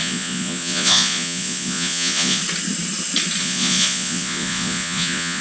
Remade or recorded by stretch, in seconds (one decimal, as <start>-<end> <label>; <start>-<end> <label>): 0.0-2.4 remade; 2.4-3.4 recorded; 3.4-5.4 remade